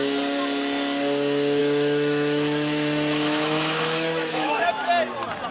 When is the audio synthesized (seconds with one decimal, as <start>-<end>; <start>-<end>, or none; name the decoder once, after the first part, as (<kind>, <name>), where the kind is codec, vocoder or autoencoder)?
1.6-4.9 (autoencoder, DAC-VAE)